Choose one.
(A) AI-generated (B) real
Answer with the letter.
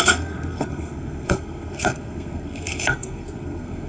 A